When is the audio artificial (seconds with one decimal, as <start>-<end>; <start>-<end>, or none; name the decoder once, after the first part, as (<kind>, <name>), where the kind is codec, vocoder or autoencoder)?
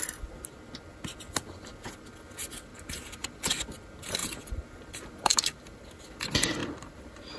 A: 2.7-3.4 (vocoder, BigVGAN v2); 4.2-6.0; 6.6-7.4